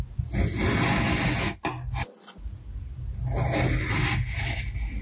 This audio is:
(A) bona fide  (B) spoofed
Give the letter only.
A